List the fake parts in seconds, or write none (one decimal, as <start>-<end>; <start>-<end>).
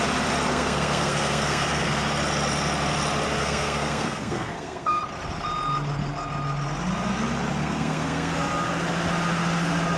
0.5-1.9; 3.4-5.0; 7.6-8.3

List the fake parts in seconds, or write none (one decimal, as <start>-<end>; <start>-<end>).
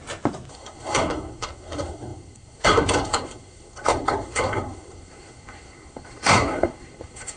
0.5-7.4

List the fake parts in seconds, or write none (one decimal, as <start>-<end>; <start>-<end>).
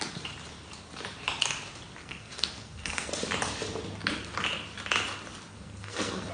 2.0-3.1; 5.5-6.3